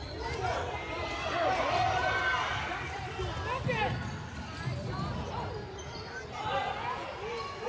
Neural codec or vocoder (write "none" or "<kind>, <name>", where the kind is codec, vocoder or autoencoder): none